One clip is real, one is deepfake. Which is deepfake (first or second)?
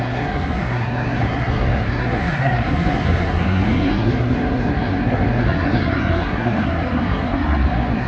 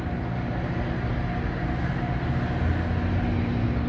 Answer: first